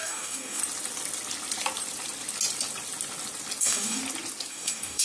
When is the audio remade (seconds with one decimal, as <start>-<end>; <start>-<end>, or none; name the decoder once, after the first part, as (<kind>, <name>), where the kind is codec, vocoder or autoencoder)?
0.0-0.6 (codec, DAC); 3.6-4.0; 4.5-5.0